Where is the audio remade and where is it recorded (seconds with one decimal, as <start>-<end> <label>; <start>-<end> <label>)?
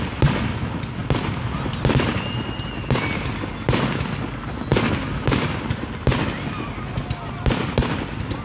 0.0-8.4 recorded